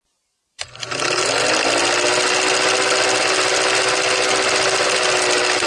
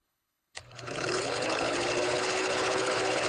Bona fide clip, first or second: first